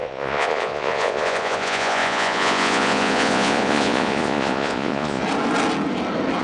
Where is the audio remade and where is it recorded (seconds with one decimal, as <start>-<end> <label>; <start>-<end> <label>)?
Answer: 0.0-5.2 remade; 5.2-6.4 recorded